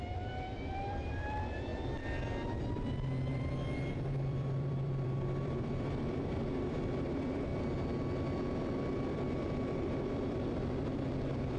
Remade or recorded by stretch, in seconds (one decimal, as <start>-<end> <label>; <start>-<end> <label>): 0.0-1.7 remade; 1.7-3.3 recorded; 3.3-7.5 remade; 7.5-9.0 recorded; 9.0-11.6 remade